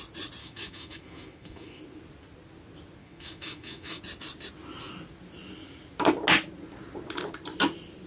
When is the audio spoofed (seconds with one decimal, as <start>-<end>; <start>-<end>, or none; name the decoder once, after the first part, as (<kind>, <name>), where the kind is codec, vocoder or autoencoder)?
0.4-1.8 (autoencoder, DAC-VAE); 3.0-4.0